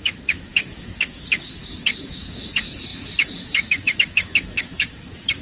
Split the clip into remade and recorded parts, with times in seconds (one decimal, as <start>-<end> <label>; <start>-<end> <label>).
0.0-5.4 remade